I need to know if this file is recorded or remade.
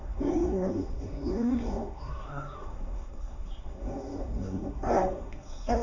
remade